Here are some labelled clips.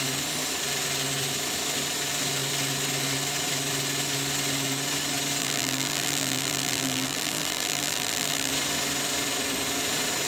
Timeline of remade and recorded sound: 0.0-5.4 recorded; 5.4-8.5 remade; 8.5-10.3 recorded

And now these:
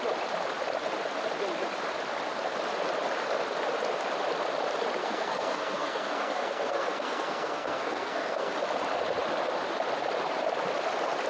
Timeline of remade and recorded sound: 0.0-5.0 recorded; 5.0-8.5 remade; 8.5-11.3 recorded

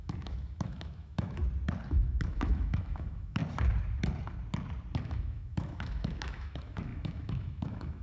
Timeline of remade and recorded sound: 0.0-1.4 remade; 1.4-1.9 recorded; 1.9-3.4 remade; 3.4-5.0 recorded; 5.0-8.0 remade

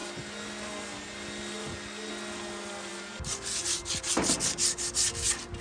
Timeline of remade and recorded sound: 0.0-5.6 recorded

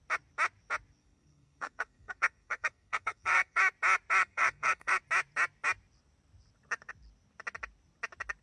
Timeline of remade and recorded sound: 0.0-1.0 recorded; 1.0-3.6 remade; 3.6-4.2 recorded; 4.2-5.0 remade; 5.0-8.4 recorded

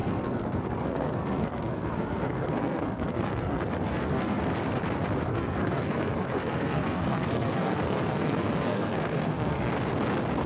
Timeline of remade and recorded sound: 0.0-4.4 remade; 4.4-5.3 recorded; 5.3-9.7 remade; 9.7-10.5 recorded

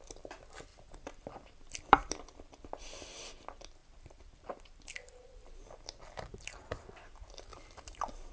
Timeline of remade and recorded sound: 0.0-0.7 recorded; 0.7-2.6 remade; 2.6-3.8 recorded; 3.8-6.9 remade; 6.9-7.5 recorded; 7.5-8.3 remade